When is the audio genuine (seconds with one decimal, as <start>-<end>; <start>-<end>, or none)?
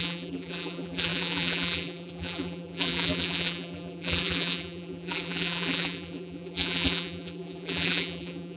none